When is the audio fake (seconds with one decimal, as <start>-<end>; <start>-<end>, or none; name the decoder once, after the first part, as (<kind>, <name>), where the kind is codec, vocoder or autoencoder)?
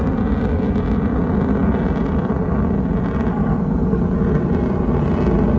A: 3.3-4.0 (codec, SNAC)